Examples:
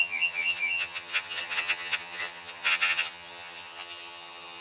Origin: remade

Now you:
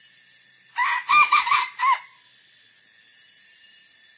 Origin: recorded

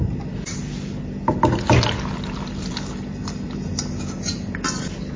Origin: recorded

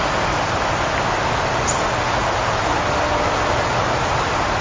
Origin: recorded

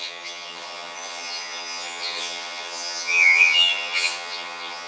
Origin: remade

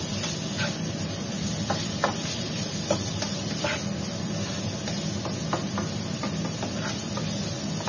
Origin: recorded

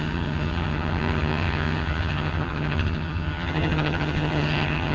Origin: remade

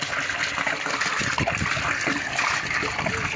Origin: recorded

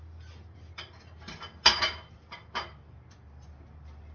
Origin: recorded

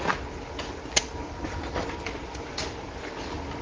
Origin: recorded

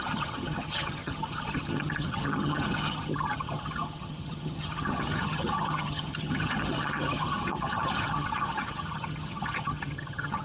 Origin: remade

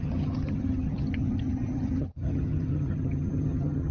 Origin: remade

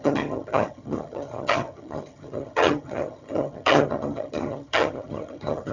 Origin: remade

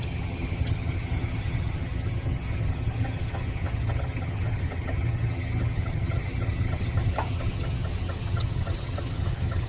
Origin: remade